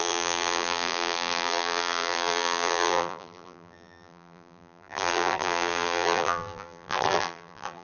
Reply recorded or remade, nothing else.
remade